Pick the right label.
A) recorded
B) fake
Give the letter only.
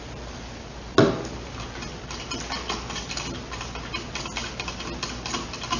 A